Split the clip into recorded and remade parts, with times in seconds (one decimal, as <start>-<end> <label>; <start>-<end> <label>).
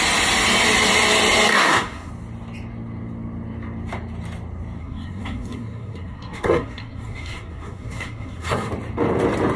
0.0-1.5 recorded; 1.5-2.1 remade; 2.1-4.8 recorded; 4.8-8.7 remade; 8.7-9.6 recorded